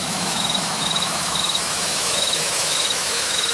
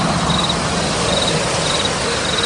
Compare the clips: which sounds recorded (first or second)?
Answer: second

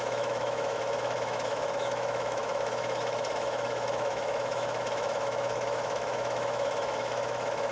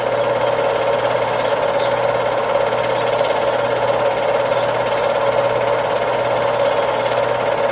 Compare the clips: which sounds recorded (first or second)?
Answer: second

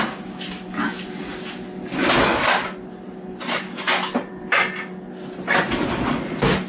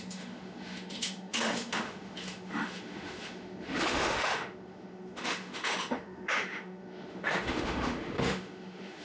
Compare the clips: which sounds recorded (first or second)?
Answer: first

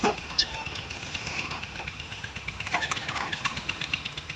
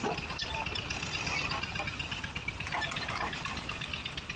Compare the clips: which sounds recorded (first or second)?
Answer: second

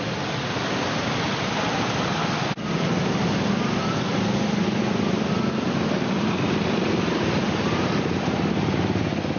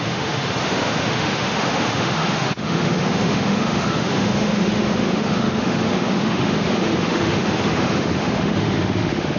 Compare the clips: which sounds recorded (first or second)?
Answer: first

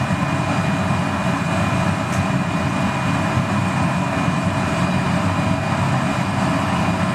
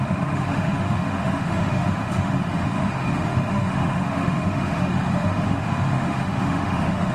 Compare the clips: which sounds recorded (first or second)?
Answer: first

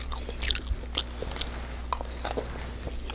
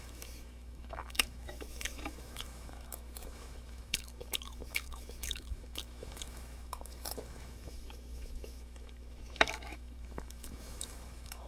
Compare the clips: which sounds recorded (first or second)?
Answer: first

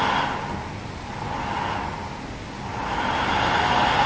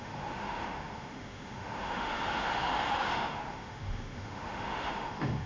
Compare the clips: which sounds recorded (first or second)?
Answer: first